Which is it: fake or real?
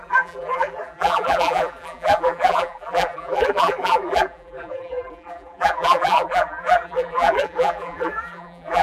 fake